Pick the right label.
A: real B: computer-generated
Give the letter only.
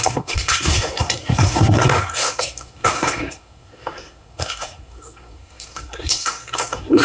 B